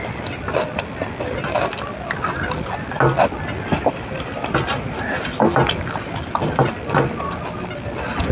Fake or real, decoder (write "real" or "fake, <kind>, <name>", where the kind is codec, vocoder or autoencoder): real